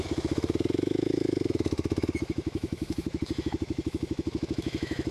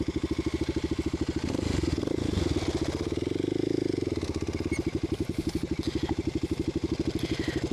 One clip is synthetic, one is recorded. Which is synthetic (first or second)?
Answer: first